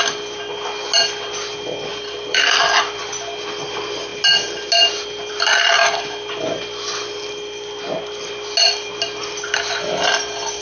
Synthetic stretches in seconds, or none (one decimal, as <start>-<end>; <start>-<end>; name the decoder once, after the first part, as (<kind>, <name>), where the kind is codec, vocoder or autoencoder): 1.9-3.0 (vocoder, BigVGAN v2)